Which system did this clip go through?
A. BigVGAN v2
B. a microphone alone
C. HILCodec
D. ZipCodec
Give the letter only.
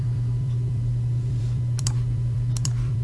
A